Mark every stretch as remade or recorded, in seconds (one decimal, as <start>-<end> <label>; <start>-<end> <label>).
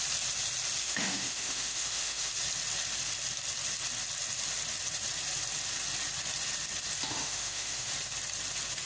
0.0-0.8 recorded; 0.8-2.3 remade; 2.3-7.1 recorded; 7.1-7.9 remade; 7.9-8.9 recorded